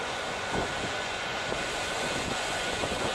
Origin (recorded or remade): remade